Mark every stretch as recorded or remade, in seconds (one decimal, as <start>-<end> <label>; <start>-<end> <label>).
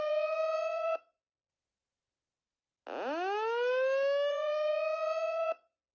0.0-2.2 remade; 2.2-4.3 recorded; 4.3-5.9 remade